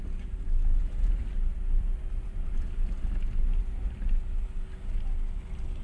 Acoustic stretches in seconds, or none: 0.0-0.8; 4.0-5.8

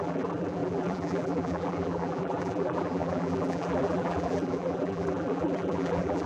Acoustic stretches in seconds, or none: none

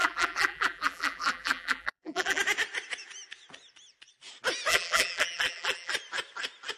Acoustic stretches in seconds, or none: 2.4-4.7; 5.9-6.8